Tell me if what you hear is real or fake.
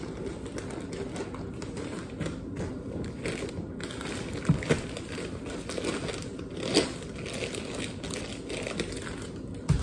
real